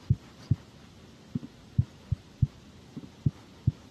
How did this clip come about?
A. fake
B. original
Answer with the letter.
A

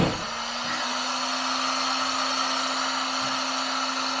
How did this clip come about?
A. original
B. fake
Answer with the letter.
A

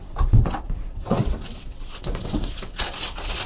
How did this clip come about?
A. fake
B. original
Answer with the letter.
A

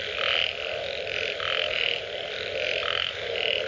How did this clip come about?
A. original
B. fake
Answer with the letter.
A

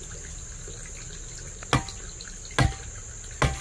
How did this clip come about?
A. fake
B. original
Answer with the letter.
B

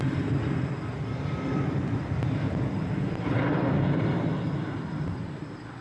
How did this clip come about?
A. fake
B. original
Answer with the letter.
B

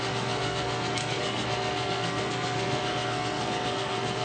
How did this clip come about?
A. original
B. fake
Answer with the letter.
B